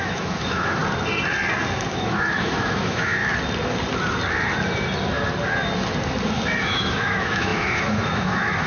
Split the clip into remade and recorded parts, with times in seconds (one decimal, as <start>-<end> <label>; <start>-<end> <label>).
0.0-0.8 remade; 0.8-1.9 recorded; 1.9-3.2 remade; 3.2-6.6 recorded; 6.6-8.7 remade